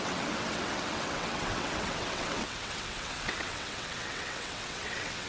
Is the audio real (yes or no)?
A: no